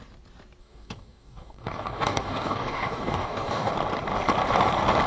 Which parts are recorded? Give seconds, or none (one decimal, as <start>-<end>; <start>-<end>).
0.0-0.6; 3.7-5.1